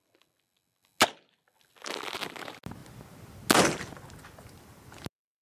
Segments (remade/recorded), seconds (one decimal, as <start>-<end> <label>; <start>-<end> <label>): 0.0-5.4 recorded